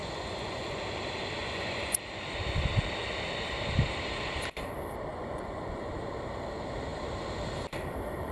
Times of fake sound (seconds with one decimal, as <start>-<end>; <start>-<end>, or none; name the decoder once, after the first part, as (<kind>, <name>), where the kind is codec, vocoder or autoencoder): 0.0-0.8 (vocoder, Vocos); 1.4-2.0; 5.1-5.9